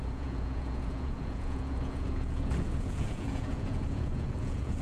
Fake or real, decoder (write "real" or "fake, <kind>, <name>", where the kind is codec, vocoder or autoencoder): fake, vocoder, Vocos